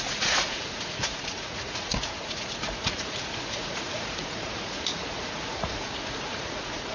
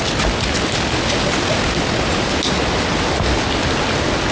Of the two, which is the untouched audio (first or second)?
second